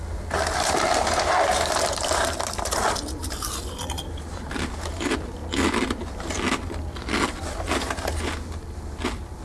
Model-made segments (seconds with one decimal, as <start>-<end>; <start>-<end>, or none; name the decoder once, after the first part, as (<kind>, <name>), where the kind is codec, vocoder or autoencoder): none